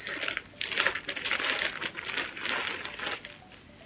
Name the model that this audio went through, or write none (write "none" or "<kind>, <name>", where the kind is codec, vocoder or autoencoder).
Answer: none